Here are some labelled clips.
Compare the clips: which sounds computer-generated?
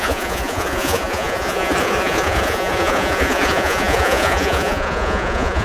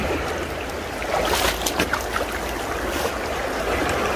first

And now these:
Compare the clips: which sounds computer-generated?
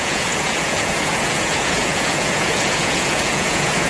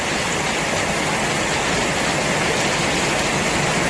first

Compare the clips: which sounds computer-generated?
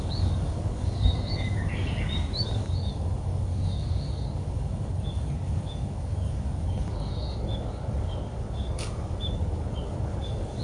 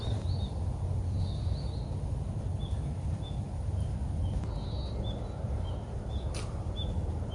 first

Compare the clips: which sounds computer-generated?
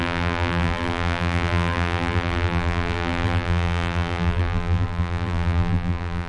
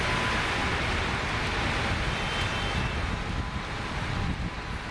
first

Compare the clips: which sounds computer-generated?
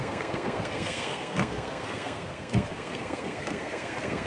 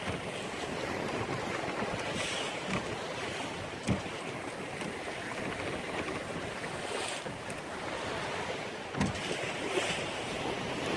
first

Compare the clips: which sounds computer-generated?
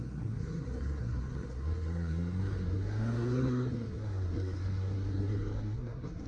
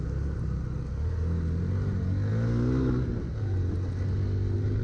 first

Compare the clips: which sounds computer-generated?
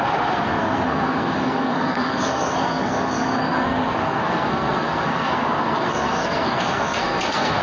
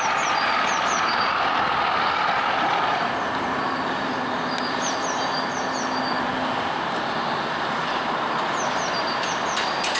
first